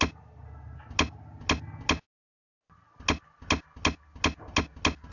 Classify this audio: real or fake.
real